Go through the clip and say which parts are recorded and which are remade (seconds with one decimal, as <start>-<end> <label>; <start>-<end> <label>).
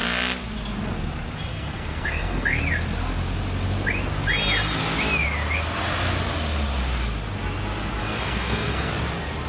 0.0-1.5 recorded; 1.5-2.6 remade; 2.6-8.0 recorded; 8.0-8.9 remade; 8.9-9.5 recorded